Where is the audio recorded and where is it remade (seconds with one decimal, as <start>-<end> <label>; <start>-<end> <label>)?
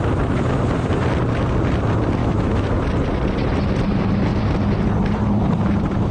0.0-2.2 recorded; 2.2-2.8 remade; 2.8-6.1 recorded